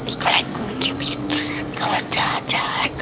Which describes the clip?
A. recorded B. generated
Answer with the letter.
B